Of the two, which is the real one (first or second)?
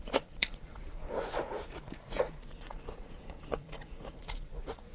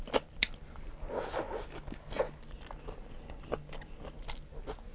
second